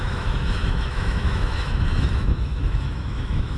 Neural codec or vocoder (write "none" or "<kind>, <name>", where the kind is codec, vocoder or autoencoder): autoencoder, DAC-VAE